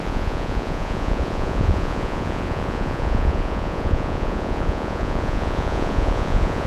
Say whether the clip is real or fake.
fake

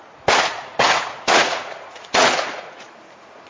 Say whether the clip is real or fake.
fake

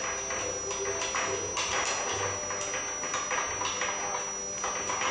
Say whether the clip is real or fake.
real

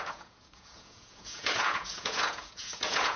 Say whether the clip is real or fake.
fake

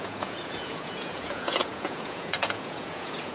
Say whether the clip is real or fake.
fake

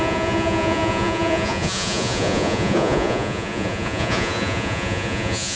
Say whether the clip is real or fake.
fake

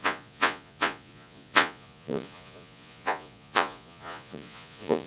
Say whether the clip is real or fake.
fake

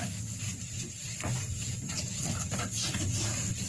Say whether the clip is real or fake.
real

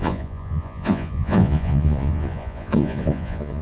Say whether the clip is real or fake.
fake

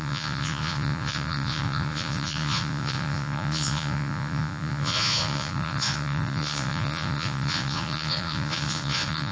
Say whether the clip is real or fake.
fake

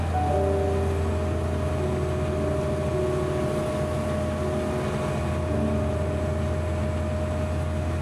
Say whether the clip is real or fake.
real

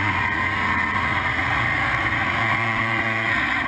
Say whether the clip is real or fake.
fake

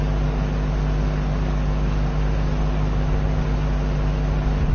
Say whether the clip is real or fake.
real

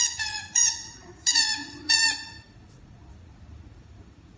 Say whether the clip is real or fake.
fake